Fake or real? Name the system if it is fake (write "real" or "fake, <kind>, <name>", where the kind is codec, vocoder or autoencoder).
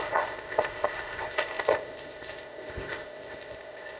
fake, codec, ZipCodec